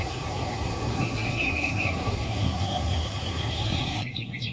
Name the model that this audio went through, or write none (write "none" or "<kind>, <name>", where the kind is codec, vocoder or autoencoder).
codec, SNAC